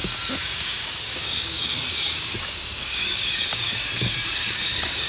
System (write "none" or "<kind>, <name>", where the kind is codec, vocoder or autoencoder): codec, DAC